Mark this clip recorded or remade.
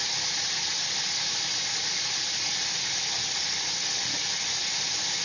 recorded